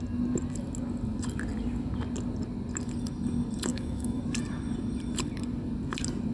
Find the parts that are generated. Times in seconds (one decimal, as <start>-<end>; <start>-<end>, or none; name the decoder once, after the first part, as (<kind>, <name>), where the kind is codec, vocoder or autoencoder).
3.7-4.2 (autoencoder, DAC-VAE)